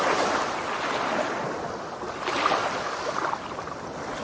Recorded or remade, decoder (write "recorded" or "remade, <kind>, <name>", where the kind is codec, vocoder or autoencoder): recorded